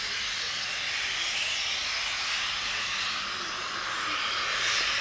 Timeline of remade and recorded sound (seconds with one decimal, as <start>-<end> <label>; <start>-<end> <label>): 0.0-5.0 recorded